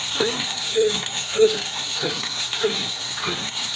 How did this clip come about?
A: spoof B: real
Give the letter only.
A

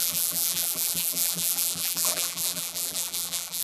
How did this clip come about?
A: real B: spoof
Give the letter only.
B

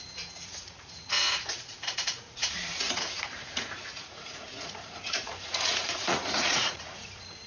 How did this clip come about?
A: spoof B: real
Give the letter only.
A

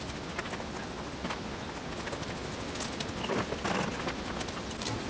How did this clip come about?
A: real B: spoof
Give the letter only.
A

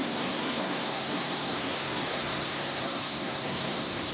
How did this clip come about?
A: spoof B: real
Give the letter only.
A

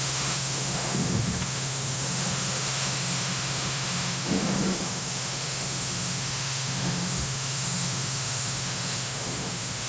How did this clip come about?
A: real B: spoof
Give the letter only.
B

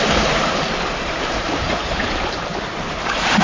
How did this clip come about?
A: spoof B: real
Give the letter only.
A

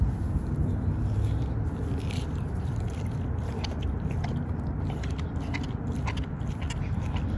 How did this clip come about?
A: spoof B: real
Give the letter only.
B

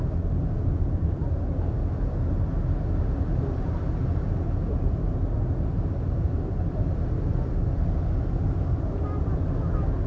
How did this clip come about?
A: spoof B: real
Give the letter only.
B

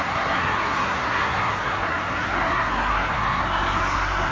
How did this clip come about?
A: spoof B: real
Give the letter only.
A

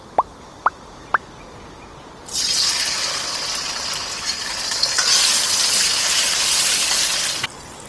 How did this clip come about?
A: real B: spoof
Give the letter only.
A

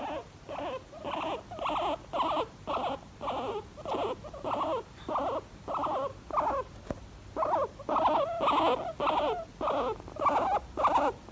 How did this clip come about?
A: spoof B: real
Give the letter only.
B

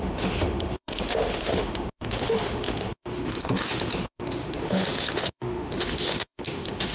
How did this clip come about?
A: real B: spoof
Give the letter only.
B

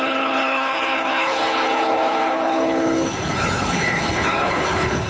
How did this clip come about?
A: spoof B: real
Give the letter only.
A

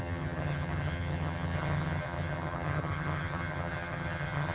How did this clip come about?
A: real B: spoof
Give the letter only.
B